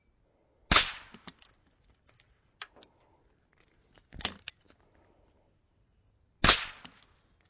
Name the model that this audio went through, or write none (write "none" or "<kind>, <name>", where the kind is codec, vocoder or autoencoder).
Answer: none